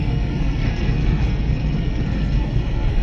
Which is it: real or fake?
fake